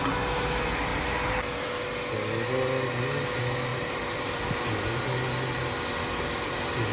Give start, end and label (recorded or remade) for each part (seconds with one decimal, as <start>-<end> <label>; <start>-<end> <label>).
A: 0.0-0.9 recorded; 0.9-1.7 remade; 1.7-3.7 recorded; 3.7-5.0 remade; 5.0-6.9 recorded